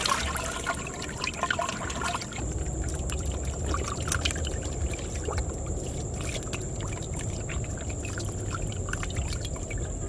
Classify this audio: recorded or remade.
recorded